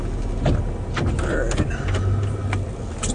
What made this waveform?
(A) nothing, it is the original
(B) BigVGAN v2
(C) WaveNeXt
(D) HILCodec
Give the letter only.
A